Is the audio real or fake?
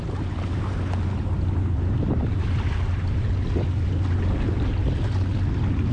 real